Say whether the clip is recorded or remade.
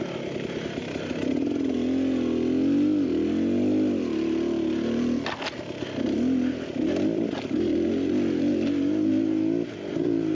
recorded